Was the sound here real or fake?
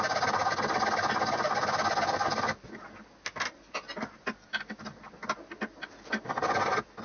real